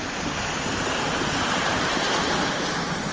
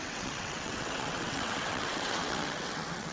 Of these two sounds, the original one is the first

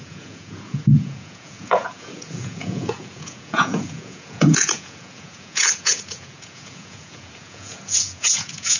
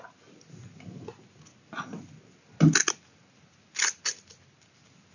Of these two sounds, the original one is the second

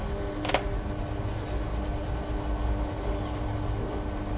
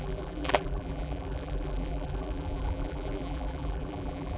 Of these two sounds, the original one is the first